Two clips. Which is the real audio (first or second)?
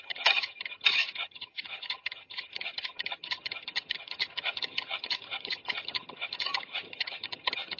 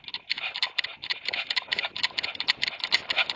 second